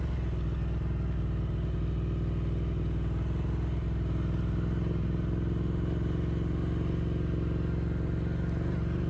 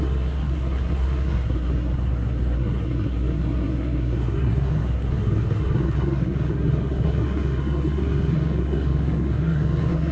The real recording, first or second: first